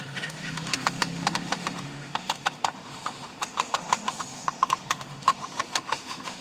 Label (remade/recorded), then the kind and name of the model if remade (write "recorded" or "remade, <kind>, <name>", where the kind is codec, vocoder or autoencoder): remade, autoencoder, DAC-VAE